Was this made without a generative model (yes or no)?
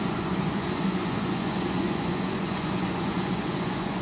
no